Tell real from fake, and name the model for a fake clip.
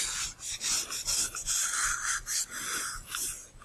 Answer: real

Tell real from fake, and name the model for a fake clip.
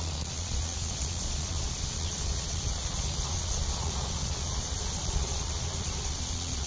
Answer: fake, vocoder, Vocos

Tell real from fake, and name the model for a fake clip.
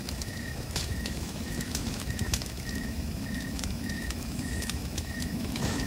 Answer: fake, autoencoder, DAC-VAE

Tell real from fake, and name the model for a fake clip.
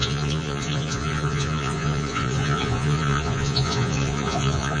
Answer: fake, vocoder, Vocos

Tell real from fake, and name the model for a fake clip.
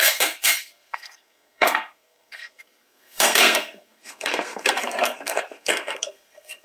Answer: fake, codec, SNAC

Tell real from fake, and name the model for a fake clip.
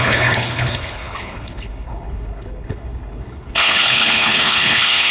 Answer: fake, codec, HILCodec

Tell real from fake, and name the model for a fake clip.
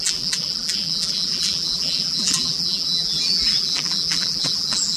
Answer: fake, vocoder, BigVGAN v2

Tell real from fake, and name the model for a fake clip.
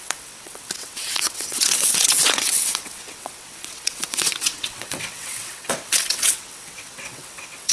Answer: fake, vocoder, WaveNeXt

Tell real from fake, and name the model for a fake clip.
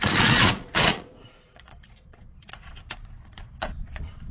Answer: fake, vocoder, Vocos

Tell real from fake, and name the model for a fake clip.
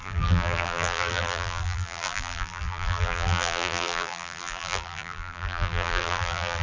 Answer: fake, vocoder, BigVGAN v2